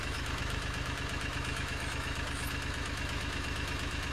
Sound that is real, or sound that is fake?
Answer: fake